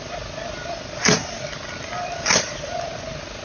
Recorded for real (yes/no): yes